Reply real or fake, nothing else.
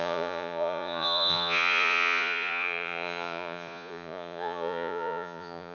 fake